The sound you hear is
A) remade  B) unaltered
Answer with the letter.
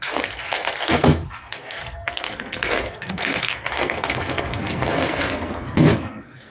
A